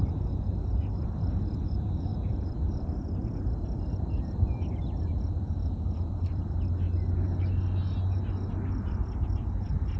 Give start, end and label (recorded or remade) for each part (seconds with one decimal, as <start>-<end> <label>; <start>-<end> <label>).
0.0-2.1 recorded; 2.1-6.7 remade; 6.7-10.0 recorded